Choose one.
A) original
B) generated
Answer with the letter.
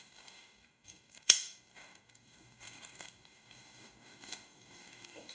B